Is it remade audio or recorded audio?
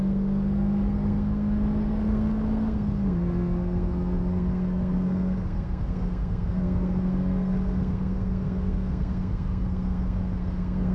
remade